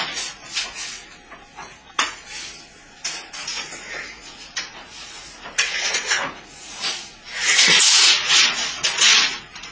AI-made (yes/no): yes